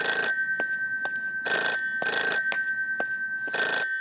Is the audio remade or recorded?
recorded